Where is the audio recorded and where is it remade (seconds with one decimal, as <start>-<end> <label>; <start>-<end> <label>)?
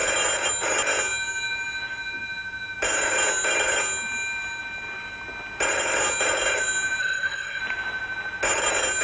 0.0-7.0 recorded; 7.0-7.6 remade; 7.6-9.0 recorded